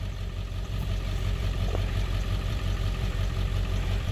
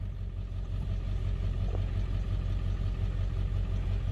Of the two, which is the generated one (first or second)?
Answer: first